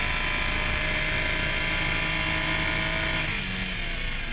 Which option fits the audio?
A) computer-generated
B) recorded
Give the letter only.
B